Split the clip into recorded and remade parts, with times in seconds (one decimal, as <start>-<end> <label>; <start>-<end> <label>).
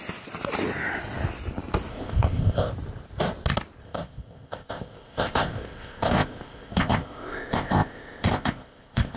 0.0-1.9 recorded; 1.9-2.7 remade; 2.7-3.8 recorded; 3.8-9.2 remade